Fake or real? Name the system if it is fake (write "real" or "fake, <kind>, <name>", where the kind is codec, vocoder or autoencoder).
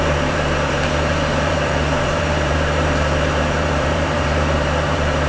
fake, vocoder, BigVGAN v2